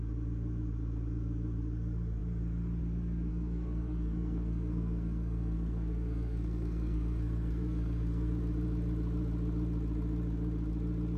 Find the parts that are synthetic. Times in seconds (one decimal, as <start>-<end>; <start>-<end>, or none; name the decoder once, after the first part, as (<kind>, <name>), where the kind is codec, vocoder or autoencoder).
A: 3.3-8.4 (codec, SNAC)